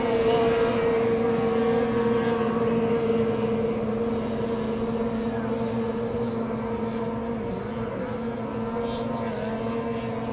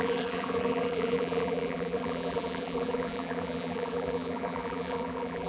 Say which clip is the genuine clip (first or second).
first